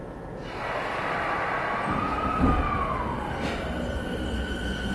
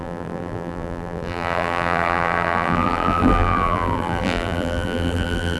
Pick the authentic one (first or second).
first